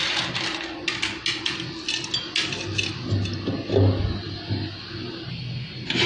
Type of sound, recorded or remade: recorded